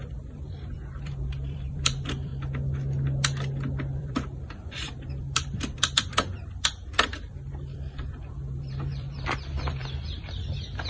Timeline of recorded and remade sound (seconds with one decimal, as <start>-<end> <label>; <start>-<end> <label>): 0.0-2.3 remade; 2.3-3.9 recorded; 3.9-10.9 remade